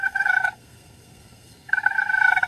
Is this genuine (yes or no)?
no